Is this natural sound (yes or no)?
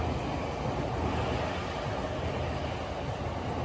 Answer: yes